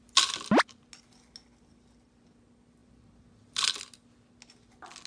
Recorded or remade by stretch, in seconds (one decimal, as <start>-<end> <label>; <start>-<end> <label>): 0.0-2.8 recorded; 2.8-3.7 remade; 3.7-5.1 recorded